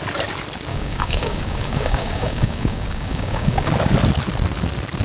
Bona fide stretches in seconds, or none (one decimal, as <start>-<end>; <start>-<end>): 0.0-0.7; 3.7-5.0